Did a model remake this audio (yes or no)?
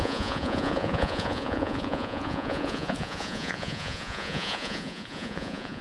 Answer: yes